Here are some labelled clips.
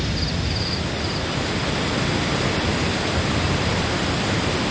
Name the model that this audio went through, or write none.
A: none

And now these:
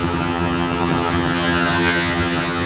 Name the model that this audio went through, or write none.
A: vocoder, HiFi-GAN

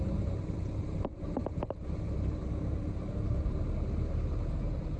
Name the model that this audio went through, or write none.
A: vocoder, BigVGAN v2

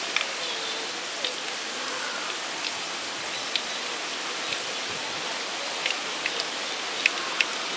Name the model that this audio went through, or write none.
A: none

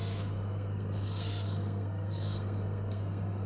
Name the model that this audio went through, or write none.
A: codec, SNAC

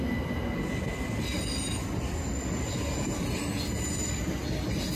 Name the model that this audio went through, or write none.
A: none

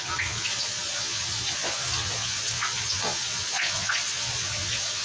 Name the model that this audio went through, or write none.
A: vocoder, Vocos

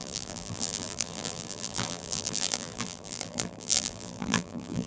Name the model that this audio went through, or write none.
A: vocoder, BigVGAN v2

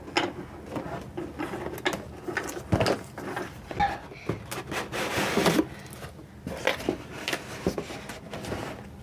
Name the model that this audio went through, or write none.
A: none